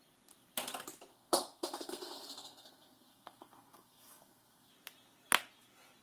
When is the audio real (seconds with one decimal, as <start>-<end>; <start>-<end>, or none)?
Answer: 0.0-1.1; 4.7-6.0